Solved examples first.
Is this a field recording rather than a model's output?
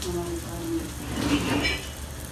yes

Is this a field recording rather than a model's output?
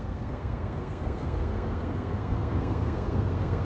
no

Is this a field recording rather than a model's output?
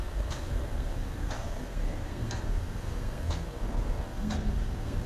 no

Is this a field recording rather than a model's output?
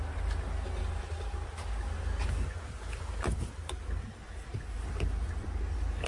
yes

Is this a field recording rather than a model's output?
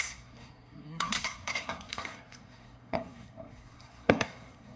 no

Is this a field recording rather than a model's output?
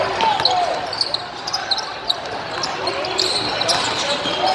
yes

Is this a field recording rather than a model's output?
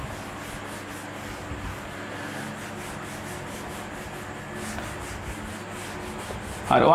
yes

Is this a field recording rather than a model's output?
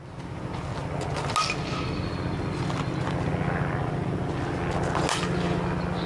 yes